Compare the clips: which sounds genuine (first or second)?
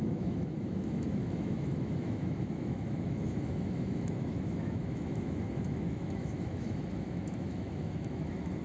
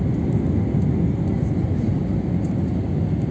second